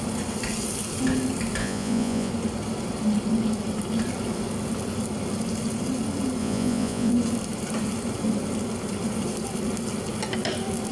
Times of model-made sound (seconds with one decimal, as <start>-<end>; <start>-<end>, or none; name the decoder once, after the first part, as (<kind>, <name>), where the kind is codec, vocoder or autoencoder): 1.6-2.3 (vocoder, Vocos); 6.4-7.1